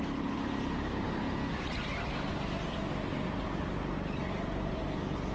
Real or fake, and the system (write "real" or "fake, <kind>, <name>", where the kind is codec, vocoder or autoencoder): real